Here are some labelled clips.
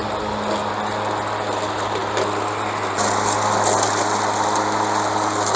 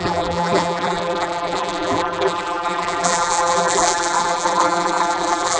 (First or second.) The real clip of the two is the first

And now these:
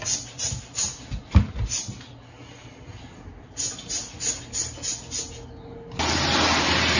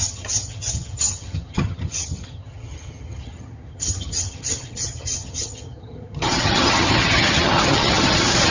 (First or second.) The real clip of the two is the first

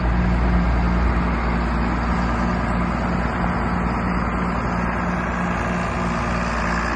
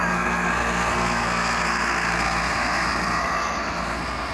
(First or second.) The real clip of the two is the first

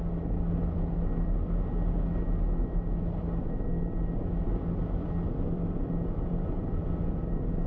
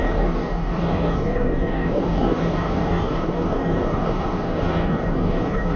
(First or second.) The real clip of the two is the first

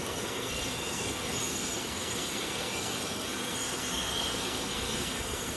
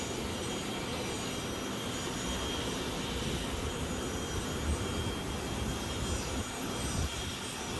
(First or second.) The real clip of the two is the second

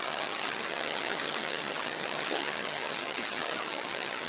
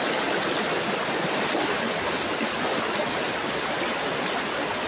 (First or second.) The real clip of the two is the second